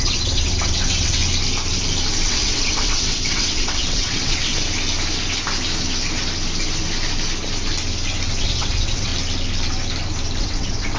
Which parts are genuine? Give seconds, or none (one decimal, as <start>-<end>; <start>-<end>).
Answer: 1.2-2.2; 4.5-8.4; 9.1-10.4